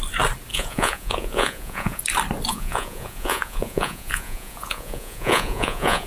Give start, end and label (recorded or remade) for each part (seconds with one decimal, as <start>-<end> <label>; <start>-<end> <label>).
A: 0.0-0.5 recorded; 0.5-2.0 remade; 2.0-2.5 recorded; 2.5-6.1 remade